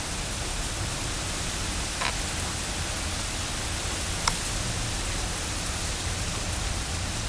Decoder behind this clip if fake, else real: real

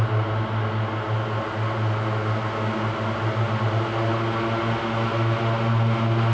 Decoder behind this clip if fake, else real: real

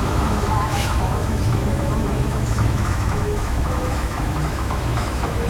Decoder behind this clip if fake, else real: fake, autoencoder, DAC-VAE